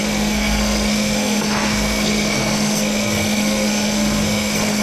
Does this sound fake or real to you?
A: fake